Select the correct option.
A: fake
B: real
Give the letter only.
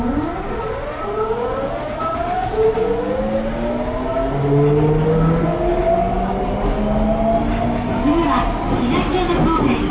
B